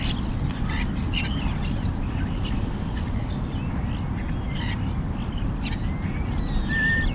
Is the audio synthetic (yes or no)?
no